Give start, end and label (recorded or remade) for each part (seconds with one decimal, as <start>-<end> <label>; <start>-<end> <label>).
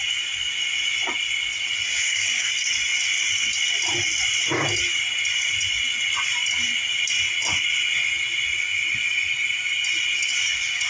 0.0-1.9 recorded; 1.9-2.5 remade; 2.5-10.9 recorded